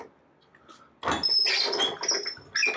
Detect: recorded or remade recorded